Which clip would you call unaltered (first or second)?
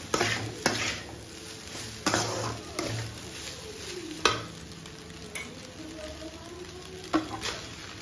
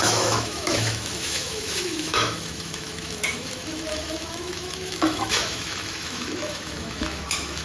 first